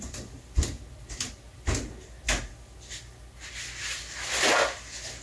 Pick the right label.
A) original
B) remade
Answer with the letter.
A